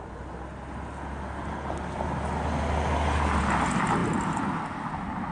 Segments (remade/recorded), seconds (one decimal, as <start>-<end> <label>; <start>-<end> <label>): 0.0-5.3 recorded